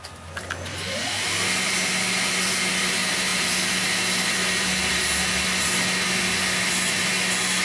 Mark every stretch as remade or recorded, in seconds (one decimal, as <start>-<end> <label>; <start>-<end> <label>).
0.0-7.6 recorded